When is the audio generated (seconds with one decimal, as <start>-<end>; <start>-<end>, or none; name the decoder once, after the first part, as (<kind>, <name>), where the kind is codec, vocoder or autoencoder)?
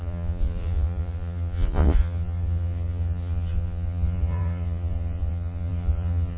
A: 0.0-6.4 (vocoder, Vocos)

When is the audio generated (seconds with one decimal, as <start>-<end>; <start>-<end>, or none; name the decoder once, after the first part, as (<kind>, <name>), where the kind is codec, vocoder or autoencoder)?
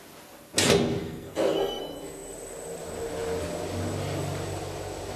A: 1.0-1.8 (codec, SNAC)